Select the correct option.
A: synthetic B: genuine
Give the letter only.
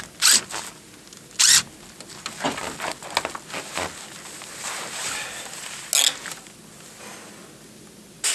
B